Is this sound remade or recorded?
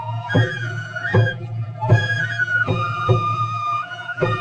remade